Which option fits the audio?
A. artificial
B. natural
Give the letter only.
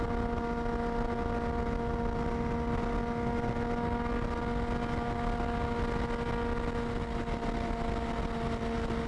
B